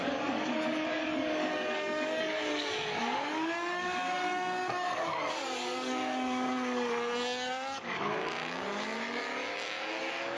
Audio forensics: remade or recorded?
remade